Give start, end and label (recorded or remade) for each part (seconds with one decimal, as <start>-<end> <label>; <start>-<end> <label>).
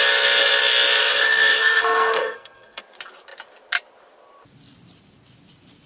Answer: 0.0-1.0 recorded; 1.0-2.8 remade; 2.8-5.9 recorded